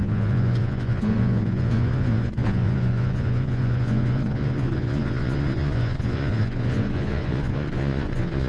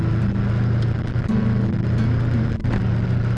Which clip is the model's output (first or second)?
first